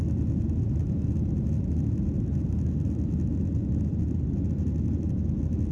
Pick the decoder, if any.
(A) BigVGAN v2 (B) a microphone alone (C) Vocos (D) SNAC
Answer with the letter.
B